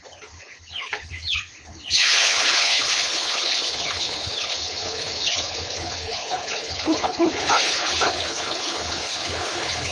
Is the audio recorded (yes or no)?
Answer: no